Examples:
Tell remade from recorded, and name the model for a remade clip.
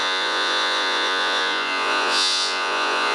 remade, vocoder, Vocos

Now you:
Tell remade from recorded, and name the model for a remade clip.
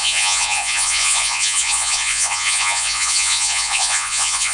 remade, vocoder, Vocos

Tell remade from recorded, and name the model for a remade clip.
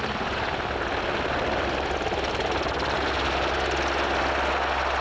recorded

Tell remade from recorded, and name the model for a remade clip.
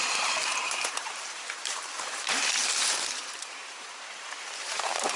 remade, vocoder, BigVGAN v2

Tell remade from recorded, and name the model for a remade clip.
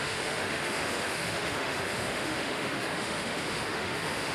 remade, autoencoder, DAC-VAE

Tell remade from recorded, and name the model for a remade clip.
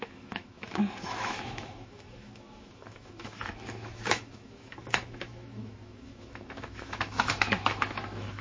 remade, autoencoder, DAC-VAE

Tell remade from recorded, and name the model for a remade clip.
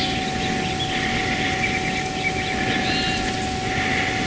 recorded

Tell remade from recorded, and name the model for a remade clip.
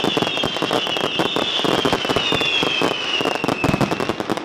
recorded